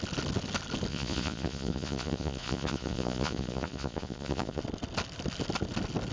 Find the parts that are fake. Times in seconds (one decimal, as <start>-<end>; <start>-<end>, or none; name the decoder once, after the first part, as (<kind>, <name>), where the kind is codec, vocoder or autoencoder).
0.9-4.6 (vocoder, Vocos)